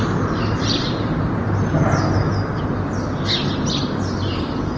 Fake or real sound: real